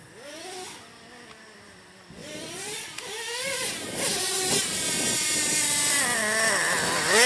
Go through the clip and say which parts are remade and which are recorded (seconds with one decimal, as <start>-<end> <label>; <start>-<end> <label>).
0.0-7.3 recorded